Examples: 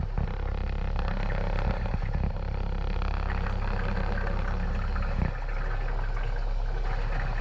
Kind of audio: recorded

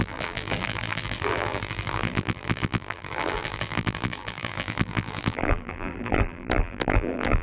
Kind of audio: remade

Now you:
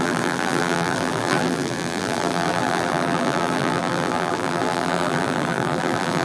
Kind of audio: remade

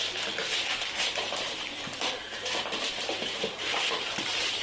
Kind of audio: remade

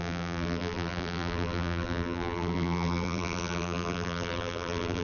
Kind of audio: remade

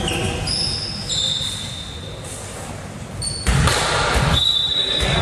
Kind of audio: recorded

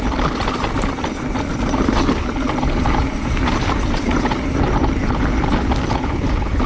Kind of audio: remade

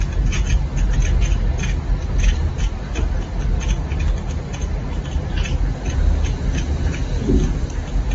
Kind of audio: recorded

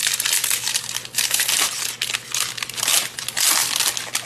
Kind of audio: recorded